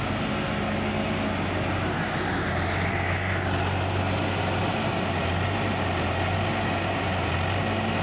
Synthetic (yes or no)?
no